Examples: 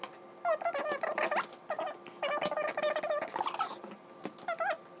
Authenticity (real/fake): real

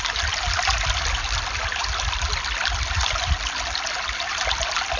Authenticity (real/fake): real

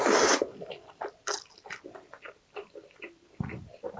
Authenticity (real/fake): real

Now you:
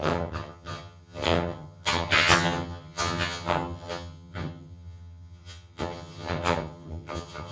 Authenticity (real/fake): fake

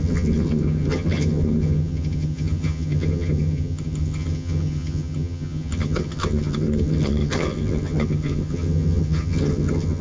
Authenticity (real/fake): fake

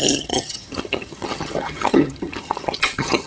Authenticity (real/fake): fake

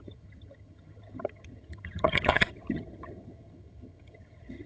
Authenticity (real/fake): fake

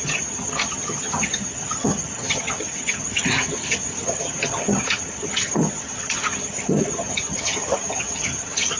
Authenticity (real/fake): fake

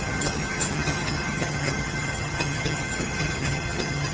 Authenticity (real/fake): fake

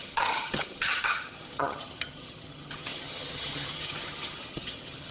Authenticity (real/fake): fake